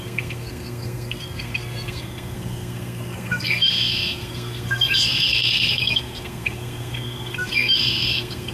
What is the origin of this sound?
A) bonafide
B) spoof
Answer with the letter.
B